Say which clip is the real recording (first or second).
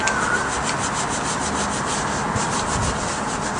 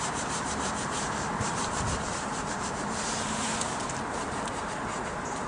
first